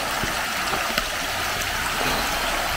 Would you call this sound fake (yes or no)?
no